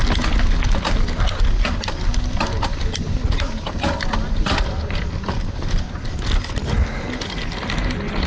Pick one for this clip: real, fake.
real